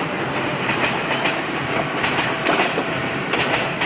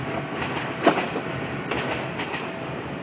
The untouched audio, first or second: second